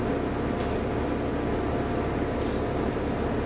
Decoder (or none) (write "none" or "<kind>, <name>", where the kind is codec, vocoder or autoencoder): none